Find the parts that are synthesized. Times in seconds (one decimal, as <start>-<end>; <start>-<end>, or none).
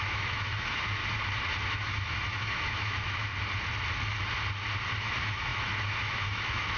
0.0-1.0; 1.7-3.3; 5.0-6.8